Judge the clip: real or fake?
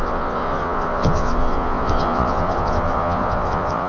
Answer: fake